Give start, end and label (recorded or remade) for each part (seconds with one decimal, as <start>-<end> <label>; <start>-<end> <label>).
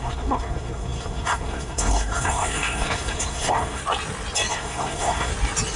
0.0-3.8 remade; 3.8-4.5 recorded; 4.5-5.3 remade; 5.3-5.8 recorded